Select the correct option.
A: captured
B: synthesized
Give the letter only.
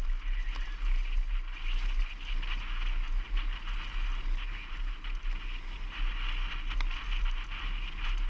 A